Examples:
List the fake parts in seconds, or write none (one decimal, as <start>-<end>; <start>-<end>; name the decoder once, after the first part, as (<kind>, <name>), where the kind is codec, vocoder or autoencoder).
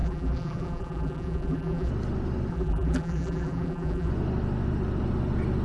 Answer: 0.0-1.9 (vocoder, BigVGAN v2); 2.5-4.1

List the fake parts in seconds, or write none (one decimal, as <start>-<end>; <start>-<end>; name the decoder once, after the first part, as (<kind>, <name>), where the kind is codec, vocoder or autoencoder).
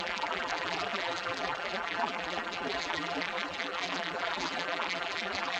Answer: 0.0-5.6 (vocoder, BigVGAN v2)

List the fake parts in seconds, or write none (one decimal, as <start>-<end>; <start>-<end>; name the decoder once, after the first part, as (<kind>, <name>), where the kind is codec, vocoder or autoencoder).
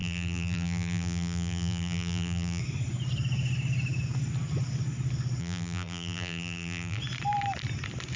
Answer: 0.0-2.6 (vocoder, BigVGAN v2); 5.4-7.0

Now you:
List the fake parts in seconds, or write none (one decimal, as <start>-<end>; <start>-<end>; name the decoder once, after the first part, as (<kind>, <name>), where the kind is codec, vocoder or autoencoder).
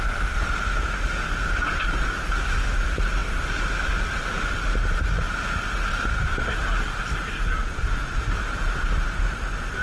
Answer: 5.9-9.2 (vocoder, BigVGAN v2)